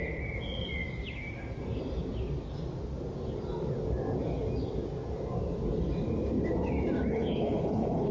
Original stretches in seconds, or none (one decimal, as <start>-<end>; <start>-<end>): 0.0-7.1